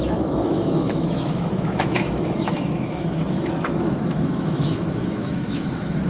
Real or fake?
fake